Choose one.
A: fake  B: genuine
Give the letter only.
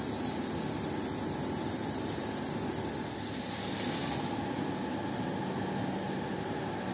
B